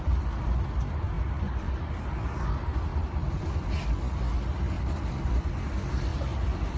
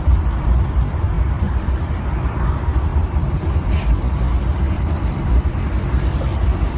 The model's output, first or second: second